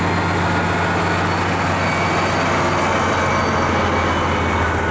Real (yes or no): yes